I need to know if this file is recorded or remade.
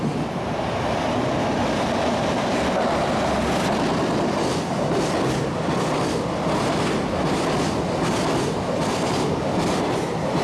recorded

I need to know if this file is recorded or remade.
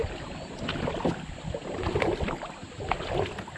recorded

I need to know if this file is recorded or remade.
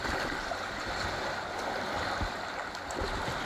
recorded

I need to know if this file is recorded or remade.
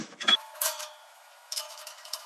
remade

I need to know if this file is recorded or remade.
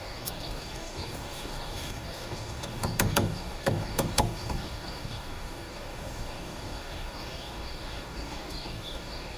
remade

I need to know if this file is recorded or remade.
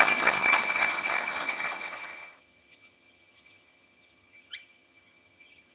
remade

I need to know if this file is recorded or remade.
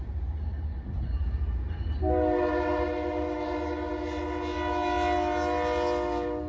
recorded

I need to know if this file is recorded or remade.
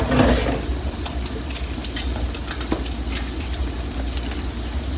recorded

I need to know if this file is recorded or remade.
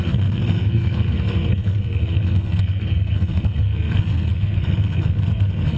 remade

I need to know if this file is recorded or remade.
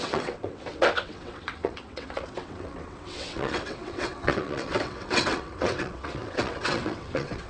remade